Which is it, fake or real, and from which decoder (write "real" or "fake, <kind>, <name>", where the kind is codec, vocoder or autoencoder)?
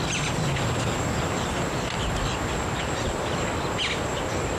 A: real